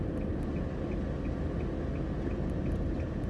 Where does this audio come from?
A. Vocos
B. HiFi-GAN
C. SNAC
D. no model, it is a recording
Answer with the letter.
D